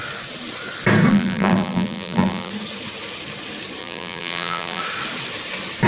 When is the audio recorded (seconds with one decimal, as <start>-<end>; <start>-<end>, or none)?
0.0-1.1; 2.5-3.8; 4.8-5.9